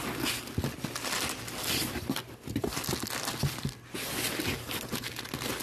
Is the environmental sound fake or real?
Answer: real